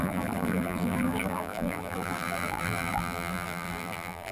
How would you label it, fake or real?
fake